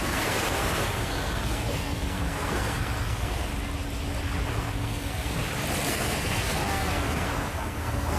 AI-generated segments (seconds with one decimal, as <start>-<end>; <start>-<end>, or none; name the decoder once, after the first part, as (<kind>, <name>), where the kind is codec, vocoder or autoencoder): 0.0-3.5 (codec, SNAC); 4.5-5.4; 5.9-8.2